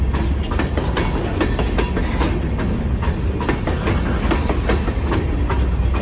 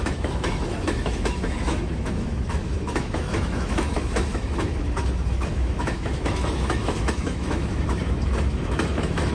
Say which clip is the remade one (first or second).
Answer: second